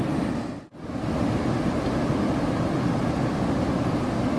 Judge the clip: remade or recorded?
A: recorded